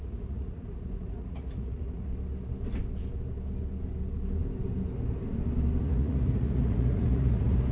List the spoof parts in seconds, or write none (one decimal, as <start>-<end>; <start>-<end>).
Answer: 0.0-2.1; 5.8-7.7